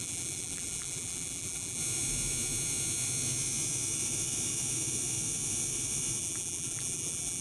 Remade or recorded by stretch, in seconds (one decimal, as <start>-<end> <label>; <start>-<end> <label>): 0.0-1.8 remade; 1.8-6.2 recorded; 6.2-7.4 remade